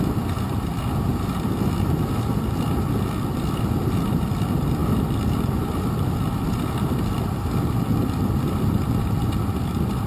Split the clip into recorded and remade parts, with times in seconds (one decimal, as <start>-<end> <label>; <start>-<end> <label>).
0.0-10.1 recorded